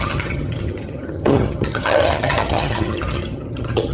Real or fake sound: fake